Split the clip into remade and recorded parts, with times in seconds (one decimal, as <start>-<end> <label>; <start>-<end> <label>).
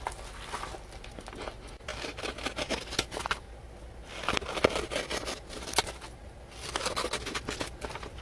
0.0-8.2 recorded